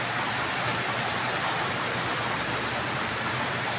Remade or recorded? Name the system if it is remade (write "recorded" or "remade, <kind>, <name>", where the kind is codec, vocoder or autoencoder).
remade, vocoder, BigVGAN v2